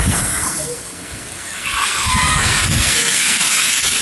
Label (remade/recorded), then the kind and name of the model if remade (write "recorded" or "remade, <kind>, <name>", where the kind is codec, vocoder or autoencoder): remade, codec, SNAC